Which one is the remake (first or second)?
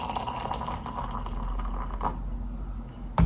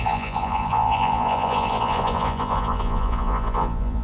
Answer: second